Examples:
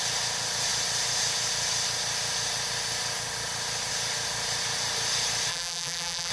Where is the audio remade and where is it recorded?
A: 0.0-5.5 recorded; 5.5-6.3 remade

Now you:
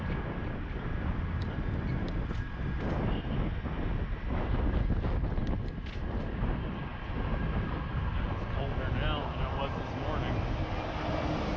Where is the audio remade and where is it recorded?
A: 0.0-11.6 recorded

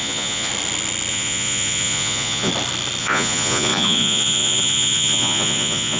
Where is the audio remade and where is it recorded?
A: 0.0-0.5 remade; 0.5-1.1 recorded; 1.1-2.5 remade; 2.5-3.0 recorded; 3.0-6.0 remade